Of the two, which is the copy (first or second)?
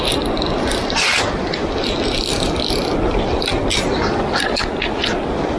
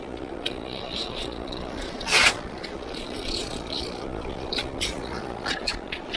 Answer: second